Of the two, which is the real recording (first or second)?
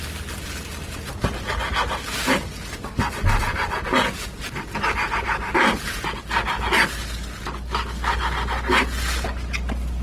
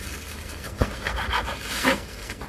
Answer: first